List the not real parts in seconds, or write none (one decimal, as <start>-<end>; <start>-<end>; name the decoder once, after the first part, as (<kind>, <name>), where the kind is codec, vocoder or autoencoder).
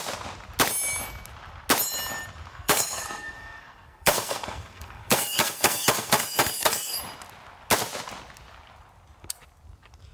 2.5-7.0 (codec, SNAC)